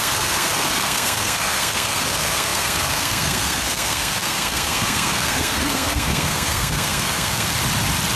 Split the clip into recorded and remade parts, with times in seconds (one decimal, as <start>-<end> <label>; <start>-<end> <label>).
0.0-7.5 remade; 7.5-8.2 recorded

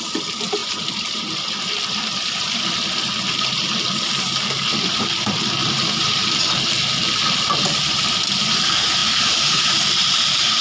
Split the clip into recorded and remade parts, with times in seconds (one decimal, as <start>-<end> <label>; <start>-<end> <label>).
0.0-0.6 recorded; 0.6-1.4 remade; 1.4-5.6 recorded; 5.6-6.4 remade; 6.4-9.0 recorded; 9.0-10.6 remade

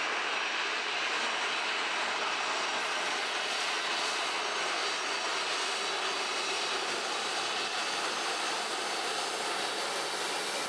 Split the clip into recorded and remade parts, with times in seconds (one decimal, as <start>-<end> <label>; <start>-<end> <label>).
0.0-2.8 recorded; 2.8-4.4 remade; 4.4-10.7 recorded

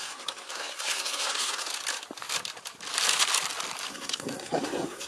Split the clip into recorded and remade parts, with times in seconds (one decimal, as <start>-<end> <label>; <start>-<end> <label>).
0.0-1.7 remade; 1.7-3.9 recorded; 3.9-5.1 remade

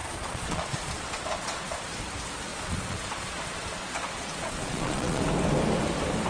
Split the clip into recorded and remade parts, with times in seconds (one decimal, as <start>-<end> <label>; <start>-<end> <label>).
0.0-2.0 remade; 2.0-2.5 recorded; 2.5-5.2 remade; 5.2-6.3 recorded

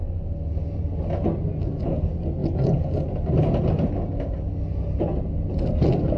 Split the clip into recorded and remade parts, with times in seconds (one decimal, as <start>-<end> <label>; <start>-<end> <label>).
0.0-6.2 recorded